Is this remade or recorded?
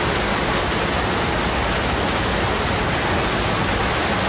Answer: recorded